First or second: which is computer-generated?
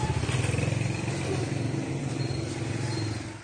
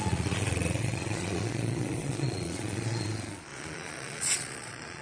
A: second